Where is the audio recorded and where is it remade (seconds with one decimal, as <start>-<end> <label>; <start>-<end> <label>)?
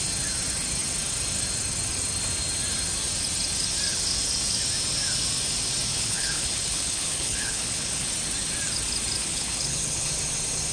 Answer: 0.0-5.9 recorded; 5.9-8.1 remade; 8.1-9.2 recorded; 9.2-10.1 remade; 10.1-10.7 recorded